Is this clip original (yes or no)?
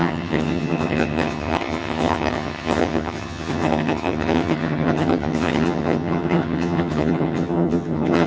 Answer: no